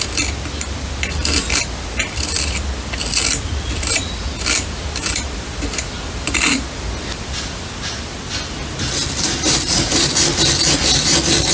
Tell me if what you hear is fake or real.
real